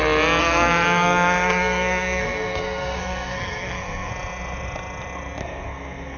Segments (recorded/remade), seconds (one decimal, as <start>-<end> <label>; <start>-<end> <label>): 0.0-0.4 recorded; 0.4-4.1 remade; 4.1-5.4 recorded; 5.4-6.2 remade